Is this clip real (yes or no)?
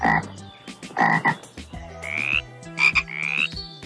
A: yes